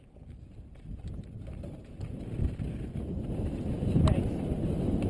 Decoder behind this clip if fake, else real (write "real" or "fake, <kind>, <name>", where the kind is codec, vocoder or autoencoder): real